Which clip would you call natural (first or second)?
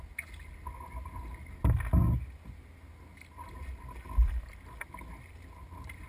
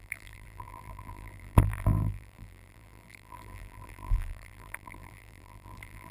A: first